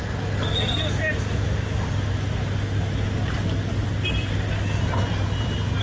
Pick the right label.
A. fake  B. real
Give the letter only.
B